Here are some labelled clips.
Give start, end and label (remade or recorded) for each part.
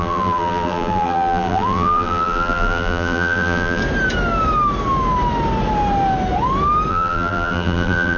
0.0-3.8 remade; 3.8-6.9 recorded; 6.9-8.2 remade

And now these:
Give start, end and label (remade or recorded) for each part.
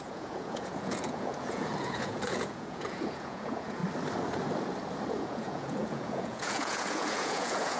0.0-3.8 remade; 3.8-5.1 recorded; 5.1-7.8 remade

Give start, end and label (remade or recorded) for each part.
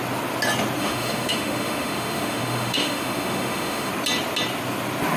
0.0-0.8 recorded; 0.8-3.9 remade; 3.9-5.2 recorded